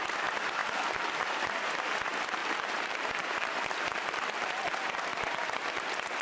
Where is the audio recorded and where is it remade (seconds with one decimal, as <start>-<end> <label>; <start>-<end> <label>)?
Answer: 0.0-0.6 recorded; 0.6-1.4 remade; 1.4-2.4 recorded; 2.4-4.6 remade; 4.6-6.2 recorded